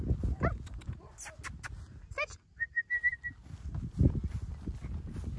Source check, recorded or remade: recorded